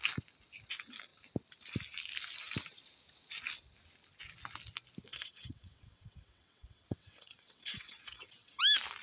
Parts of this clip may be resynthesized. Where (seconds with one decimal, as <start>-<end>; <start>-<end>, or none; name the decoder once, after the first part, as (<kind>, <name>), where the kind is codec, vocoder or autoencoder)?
5.1-8.6 (vocoder, WaveNeXt)